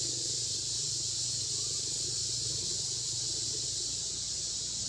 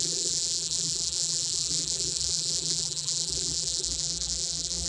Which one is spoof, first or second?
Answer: second